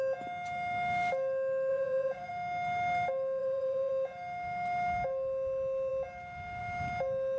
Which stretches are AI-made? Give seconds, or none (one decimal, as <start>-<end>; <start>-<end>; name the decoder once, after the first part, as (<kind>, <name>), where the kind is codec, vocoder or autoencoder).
1.7-2.3 (vocoder, Vocos); 3.4-3.9